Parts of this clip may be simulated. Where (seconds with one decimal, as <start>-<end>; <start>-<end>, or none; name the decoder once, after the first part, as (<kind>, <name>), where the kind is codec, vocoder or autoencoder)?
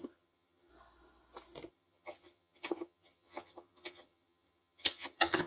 0.0-0.7 (vocoder, HiFi-GAN); 1.7-5.5